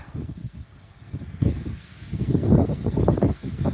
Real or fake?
fake